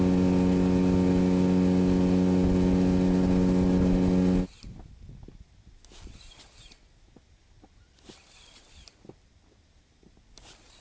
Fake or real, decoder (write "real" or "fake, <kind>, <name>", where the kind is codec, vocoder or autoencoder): real